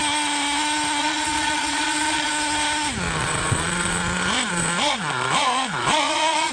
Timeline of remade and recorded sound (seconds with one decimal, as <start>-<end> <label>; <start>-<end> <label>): 0.0-1.0 recorded; 1.0-2.3 remade; 2.3-3.2 recorded; 3.2-4.0 remade; 4.0-4.5 recorded; 4.5-6.5 remade